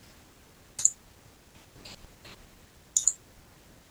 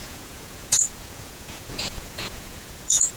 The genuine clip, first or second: first